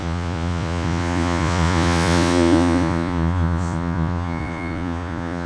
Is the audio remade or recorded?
remade